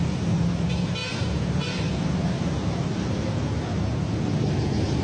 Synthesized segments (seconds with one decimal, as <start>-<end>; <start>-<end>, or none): none